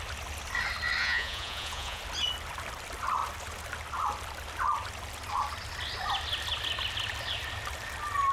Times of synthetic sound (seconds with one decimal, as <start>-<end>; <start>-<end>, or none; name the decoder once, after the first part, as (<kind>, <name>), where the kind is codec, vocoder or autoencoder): 1.0-2.0 (vocoder, Vocos)